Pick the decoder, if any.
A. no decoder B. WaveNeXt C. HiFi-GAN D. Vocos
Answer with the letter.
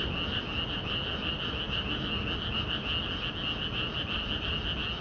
A